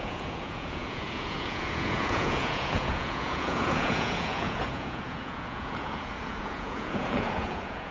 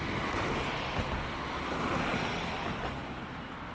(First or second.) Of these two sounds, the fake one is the first